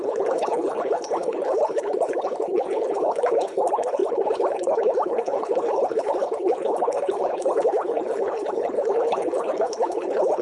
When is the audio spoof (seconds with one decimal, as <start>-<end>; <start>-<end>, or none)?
0.0-10.4

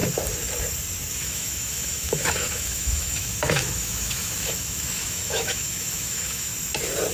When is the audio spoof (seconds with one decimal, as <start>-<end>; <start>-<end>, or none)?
1.1-6.5

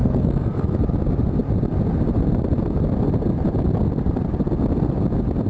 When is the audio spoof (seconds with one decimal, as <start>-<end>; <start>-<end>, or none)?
0.0-0.8

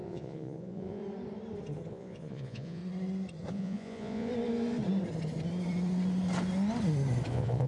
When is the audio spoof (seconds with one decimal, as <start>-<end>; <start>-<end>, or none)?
0.0-1.0; 1.9-2.8; 3.5-4.3; 7.3-7.7

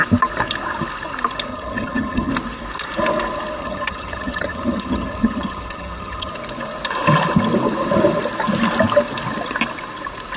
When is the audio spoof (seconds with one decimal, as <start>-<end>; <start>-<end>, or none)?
1.5-2.3; 3.6-6.3

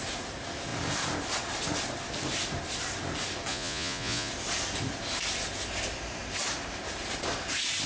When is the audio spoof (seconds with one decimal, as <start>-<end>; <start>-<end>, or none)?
3.5-4.3

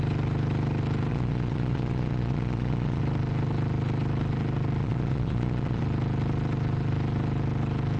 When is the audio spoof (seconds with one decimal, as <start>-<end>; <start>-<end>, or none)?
1.1-3.0; 4.8-5.8